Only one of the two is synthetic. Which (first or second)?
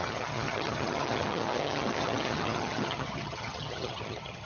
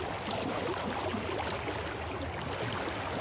first